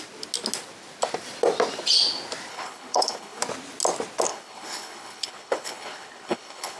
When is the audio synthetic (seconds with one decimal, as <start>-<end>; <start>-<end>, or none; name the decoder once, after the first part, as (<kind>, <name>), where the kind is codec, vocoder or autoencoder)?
2.5-3.4 (codec, HILCodec); 4.3-6.8